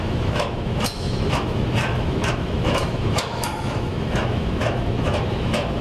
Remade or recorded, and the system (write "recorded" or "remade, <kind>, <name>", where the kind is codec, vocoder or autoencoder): remade, autoencoder, DAC-VAE